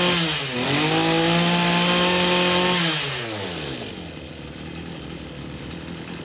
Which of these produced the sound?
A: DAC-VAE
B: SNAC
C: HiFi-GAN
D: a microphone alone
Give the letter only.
D